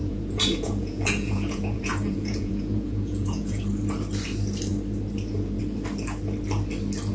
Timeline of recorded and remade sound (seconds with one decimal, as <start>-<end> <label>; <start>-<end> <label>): 0.0-3.6 remade; 3.6-7.1 recorded